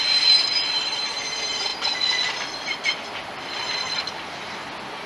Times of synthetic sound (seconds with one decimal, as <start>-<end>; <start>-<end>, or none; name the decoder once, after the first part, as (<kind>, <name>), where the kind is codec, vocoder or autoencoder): none